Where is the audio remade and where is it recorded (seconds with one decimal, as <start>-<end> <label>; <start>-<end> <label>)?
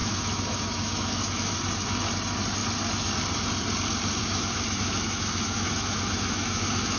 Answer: 0.0-1.5 remade; 1.5-4.2 recorded; 4.2-7.0 remade